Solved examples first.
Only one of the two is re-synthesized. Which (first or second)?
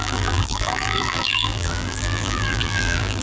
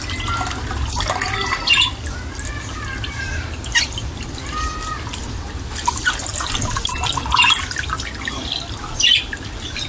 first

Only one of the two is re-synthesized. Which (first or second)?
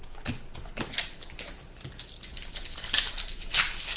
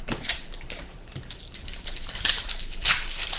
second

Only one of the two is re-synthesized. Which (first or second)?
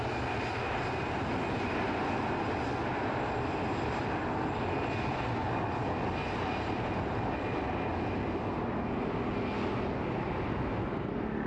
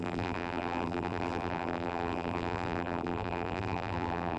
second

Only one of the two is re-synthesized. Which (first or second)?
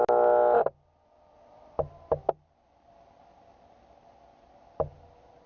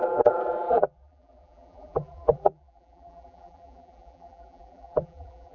second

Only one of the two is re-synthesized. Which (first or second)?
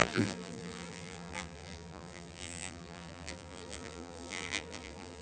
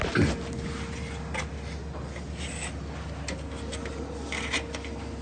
first